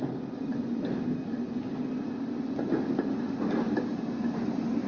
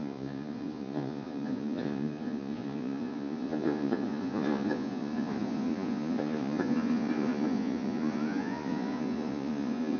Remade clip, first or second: second